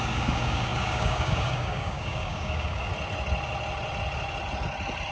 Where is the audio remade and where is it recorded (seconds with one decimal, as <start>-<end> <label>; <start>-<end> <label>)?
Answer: 0.0-2.9 remade; 2.9-5.1 recorded